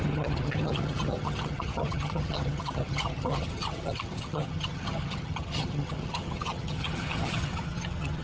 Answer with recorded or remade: remade